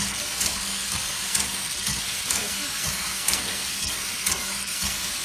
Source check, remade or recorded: remade